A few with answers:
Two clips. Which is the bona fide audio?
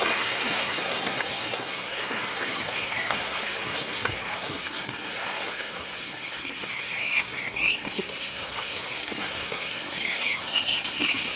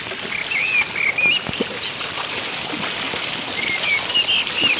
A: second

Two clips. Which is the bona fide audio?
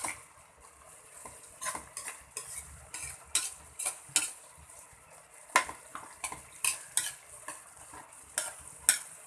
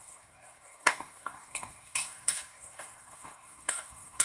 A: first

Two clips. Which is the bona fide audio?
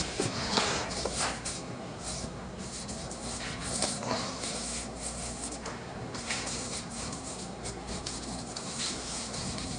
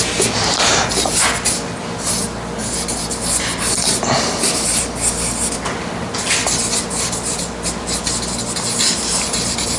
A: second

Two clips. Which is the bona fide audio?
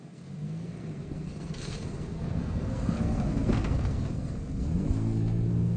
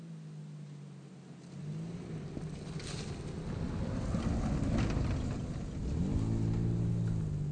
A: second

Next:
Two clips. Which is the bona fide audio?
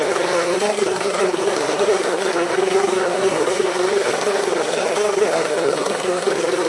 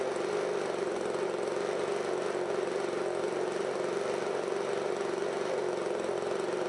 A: second